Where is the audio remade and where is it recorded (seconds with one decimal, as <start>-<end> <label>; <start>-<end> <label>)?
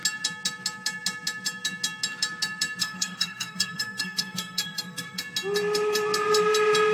0.0-2.8 recorded; 2.8-5.2 remade; 5.2-6.9 recorded